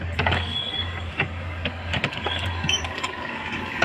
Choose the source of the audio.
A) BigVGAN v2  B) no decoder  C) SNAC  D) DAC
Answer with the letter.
D